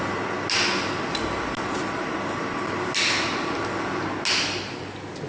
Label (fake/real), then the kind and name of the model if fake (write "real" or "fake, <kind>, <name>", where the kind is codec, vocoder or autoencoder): real